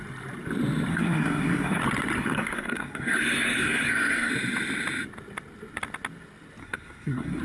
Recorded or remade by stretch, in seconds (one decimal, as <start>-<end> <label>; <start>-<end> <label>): 0.0-0.9 recorded; 0.9-1.8 remade; 1.8-2.2 recorded; 2.2-4.3 remade; 4.3-6.6 recorded; 6.6-7.4 remade